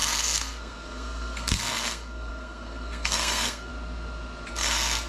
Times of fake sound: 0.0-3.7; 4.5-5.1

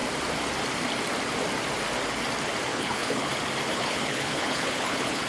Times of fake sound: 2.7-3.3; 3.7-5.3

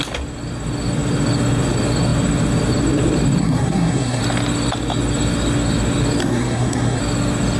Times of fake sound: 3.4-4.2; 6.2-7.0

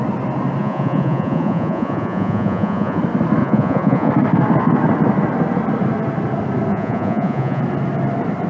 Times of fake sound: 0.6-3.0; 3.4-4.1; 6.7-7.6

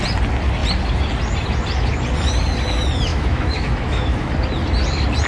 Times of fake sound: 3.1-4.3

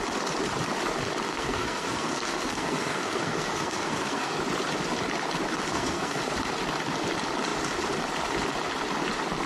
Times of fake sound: 1.3-4.4; 5.7-6.2

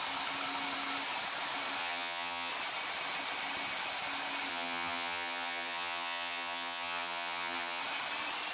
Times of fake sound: 1.8-2.5; 4.5-7.8